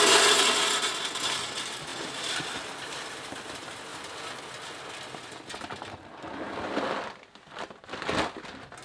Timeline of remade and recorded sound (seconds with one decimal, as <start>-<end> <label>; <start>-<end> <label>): 0.0-1.9 recorded; 1.9-3.4 remade; 3.4-8.8 recorded